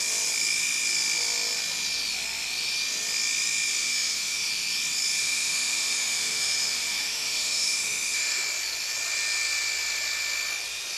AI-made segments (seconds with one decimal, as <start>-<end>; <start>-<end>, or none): 3.8-4.5; 5.2-8.4

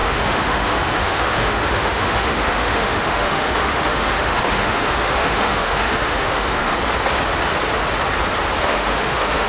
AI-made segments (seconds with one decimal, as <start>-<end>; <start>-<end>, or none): 0.0-6.7; 8.6-9.5

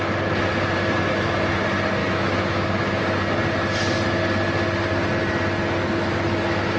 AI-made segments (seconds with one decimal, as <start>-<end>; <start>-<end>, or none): 2.0-3.0